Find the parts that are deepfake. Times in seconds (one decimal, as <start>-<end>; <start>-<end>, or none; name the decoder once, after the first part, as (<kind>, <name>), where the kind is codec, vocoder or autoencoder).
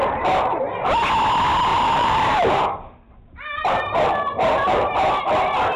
0.0-1.0 (vocoder, BigVGAN v2); 1.7-5.2